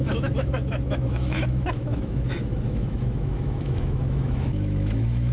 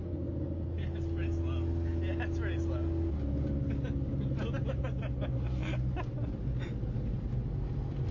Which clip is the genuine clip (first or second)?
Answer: second